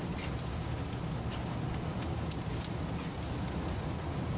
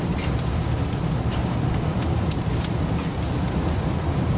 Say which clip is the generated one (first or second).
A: second